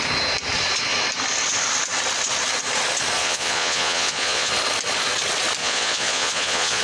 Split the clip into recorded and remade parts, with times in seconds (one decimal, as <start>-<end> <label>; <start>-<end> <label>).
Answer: 0.0-3.2 recorded; 3.2-4.5 remade; 4.5-5.6 recorded; 5.6-6.8 remade